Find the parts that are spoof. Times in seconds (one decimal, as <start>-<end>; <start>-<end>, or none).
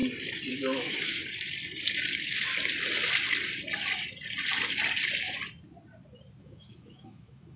0.5-1.2; 2.1-2.5; 6.4-7.6